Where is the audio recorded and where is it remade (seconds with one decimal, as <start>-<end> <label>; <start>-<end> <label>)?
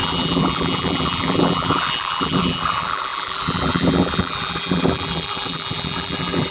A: 0.0-6.5 remade